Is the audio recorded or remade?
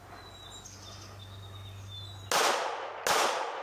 recorded